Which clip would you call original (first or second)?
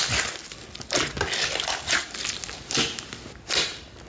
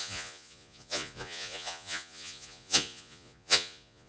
first